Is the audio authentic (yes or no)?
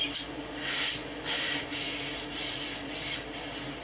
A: yes